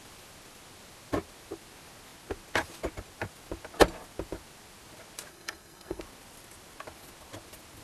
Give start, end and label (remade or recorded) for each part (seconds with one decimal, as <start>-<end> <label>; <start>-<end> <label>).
0.0-5.3 recorded; 5.3-6.0 remade; 6.0-7.8 recorded